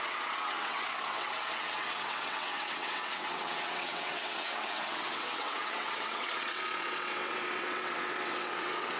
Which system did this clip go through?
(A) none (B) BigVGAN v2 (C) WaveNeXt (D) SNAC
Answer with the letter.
C